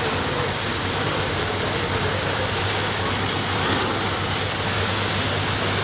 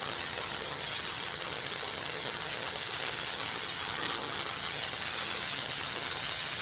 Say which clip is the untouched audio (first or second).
first